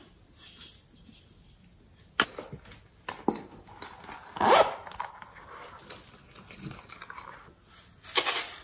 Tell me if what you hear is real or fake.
real